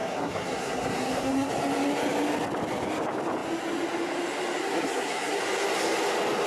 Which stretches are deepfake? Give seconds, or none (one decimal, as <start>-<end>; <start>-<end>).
0.0-1.5; 4.6-5.4

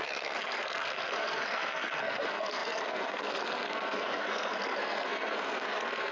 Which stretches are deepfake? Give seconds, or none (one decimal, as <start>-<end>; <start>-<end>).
0.0-6.1

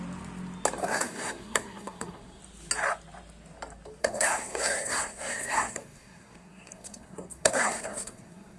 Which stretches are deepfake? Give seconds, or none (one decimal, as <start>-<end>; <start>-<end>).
0.8-2.4; 4.0-8.6

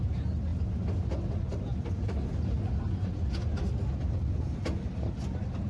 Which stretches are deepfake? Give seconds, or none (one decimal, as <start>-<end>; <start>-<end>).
none